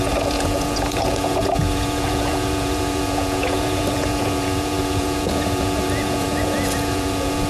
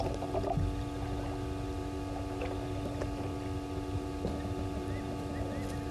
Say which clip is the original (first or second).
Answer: second